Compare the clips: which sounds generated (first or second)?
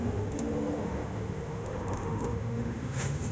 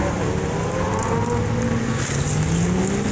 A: first